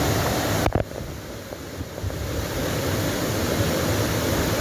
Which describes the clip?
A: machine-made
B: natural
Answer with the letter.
B